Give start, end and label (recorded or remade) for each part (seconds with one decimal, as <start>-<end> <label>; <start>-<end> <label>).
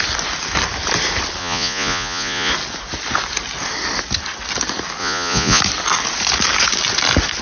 0.0-1.4 recorded; 1.4-2.5 remade; 2.5-5.0 recorded; 5.0-5.6 remade; 5.6-7.4 recorded